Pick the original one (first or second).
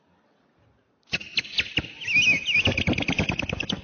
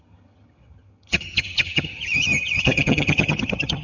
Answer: first